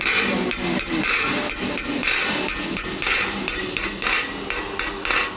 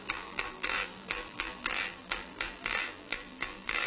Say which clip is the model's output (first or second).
second